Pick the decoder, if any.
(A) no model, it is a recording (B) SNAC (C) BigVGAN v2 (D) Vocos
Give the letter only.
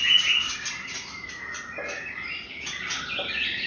A